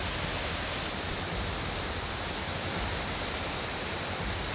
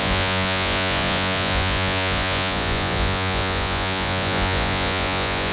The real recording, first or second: first